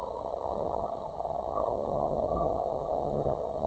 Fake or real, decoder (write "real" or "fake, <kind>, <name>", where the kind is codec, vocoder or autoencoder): fake, vocoder, HiFi-GAN